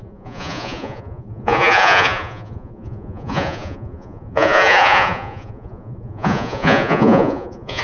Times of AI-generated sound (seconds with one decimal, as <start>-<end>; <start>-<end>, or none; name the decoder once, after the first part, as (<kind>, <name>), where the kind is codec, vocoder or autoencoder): 0.0-7.8 (vocoder, Vocos)